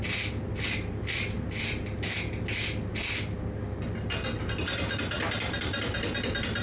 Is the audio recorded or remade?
recorded